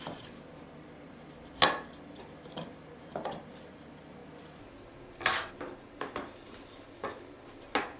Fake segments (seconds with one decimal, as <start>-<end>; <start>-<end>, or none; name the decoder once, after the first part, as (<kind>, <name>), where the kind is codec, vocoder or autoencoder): none